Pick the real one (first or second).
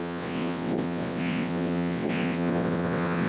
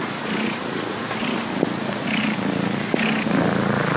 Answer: second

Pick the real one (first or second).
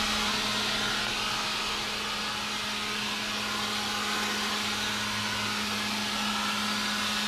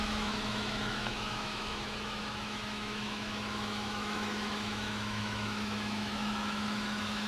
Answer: first